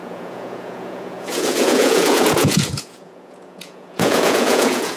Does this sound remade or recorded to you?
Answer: remade